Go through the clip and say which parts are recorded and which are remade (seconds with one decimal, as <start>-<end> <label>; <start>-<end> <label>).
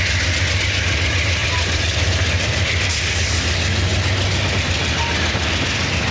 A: 0.0-1.4 recorded; 1.4-3.1 remade; 3.1-6.1 recorded